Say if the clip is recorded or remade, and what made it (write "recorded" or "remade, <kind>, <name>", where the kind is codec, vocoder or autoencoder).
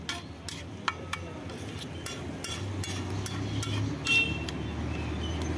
recorded